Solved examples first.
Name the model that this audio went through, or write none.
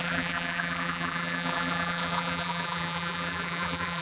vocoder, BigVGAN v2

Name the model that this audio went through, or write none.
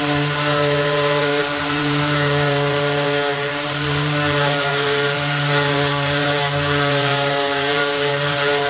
vocoder, BigVGAN v2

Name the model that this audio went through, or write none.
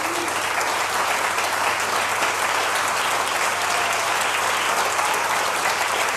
none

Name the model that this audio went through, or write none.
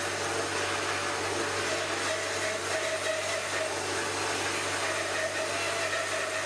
none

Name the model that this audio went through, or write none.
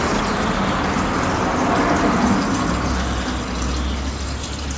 none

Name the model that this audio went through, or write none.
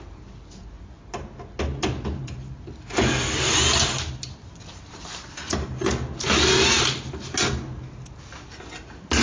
none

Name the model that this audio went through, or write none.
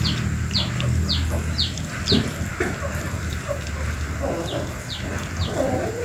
none